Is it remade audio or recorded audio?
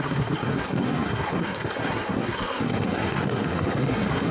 remade